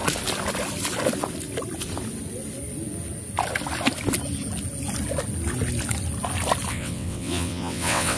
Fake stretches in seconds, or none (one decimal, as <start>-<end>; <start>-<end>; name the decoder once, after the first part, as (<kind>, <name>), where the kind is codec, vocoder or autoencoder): 6.7-8.2 (vocoder, WaveNeXt)